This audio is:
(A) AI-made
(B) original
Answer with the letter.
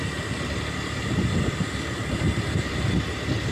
B